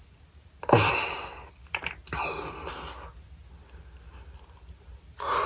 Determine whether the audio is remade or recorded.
recorded